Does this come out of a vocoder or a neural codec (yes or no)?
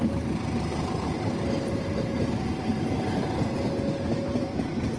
yes